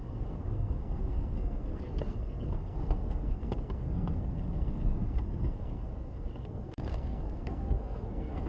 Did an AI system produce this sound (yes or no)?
yes